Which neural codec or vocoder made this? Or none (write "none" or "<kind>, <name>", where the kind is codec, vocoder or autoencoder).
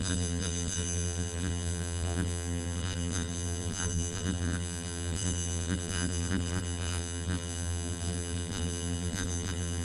vocoder, BigVGAN v2